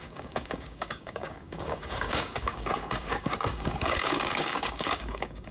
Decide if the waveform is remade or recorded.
remade